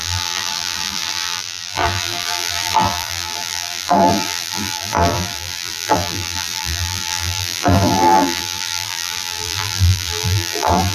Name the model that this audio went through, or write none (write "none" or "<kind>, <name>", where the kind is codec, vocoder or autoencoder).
vocoder, BigVGAN v2